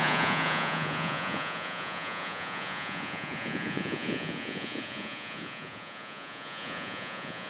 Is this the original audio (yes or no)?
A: no